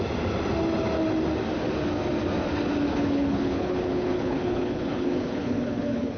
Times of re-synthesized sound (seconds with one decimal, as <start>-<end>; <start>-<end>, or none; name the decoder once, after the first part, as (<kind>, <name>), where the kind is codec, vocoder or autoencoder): 2.9-6.2 (codec, HILCodec)